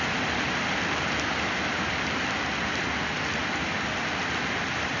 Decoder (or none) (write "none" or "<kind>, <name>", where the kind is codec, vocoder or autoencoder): none